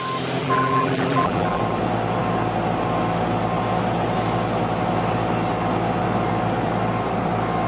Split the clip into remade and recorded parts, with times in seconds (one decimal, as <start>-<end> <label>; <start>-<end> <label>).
0.0-0.4 recorded; 0.4-1.6 remade; 1.6-7.7 recorded